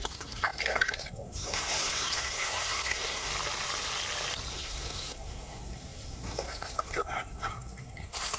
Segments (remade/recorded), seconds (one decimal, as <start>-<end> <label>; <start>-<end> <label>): 0.0-3.3 remade; 3.3-4.5 recorded; 4.5-8.4 remade